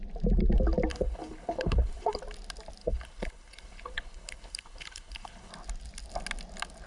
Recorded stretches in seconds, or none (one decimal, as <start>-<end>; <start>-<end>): 0.0-0.9; 2.2-2.8; 5.5-6.9